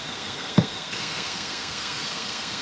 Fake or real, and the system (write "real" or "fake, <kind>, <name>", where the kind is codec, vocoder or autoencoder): fake, codec, SNAC